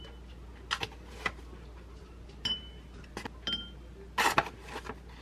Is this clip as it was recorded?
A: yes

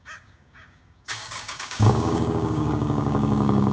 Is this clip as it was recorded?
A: no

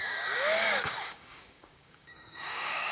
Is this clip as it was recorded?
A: no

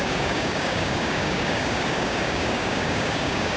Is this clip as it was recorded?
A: no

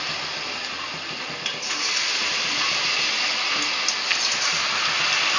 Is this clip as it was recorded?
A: yes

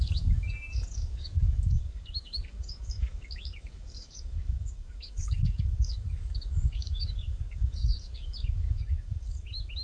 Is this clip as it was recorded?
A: no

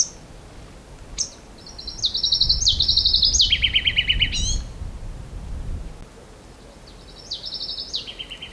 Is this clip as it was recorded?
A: yes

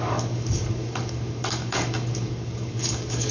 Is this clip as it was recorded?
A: no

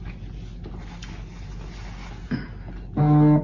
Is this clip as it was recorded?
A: yes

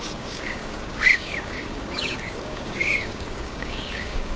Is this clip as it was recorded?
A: no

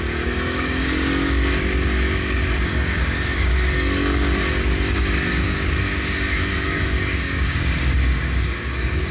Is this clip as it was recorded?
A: no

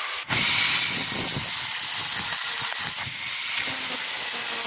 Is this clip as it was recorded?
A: yes